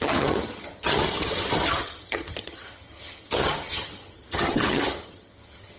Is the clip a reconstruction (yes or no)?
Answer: yes